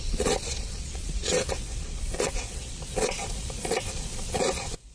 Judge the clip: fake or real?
fake